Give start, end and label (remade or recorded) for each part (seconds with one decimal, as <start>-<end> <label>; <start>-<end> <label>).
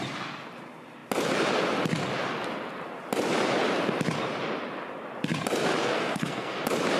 0.0-5.8 recorded; 5.8-6.6 remade; 6.6-7.0 recorded